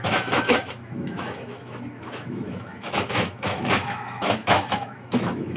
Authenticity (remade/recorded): remade